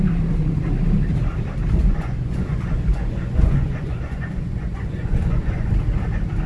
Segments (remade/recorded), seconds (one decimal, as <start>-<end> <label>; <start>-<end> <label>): 0.0-1.8 recorded; 1.8-5.7 remade; 5.7-6.5 recorded